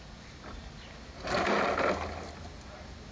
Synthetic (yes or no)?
no